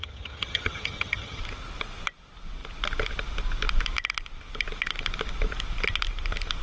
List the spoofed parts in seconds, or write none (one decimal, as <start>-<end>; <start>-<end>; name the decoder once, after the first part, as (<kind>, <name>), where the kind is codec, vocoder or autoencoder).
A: 0.0-1.4 (vocoder, HiFi-GAN)